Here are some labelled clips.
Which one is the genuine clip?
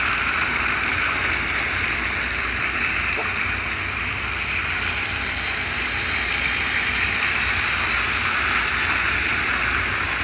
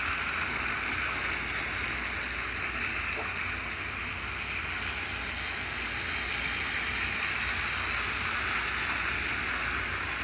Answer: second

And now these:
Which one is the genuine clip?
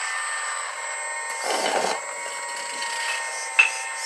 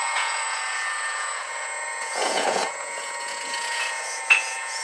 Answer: first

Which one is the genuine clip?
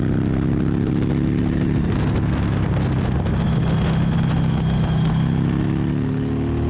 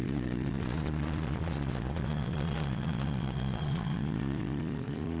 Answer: first